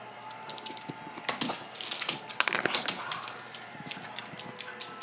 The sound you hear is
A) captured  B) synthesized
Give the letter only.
A